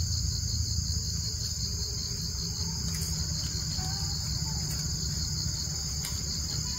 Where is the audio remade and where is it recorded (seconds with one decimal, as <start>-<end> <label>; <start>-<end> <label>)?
0.0-6.8 recorded